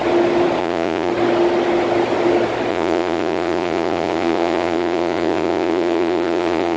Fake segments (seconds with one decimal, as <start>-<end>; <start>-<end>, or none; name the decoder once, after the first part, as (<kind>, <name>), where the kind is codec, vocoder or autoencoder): 0.6-1.1 (vocoder, Vocos); 2.7-6.8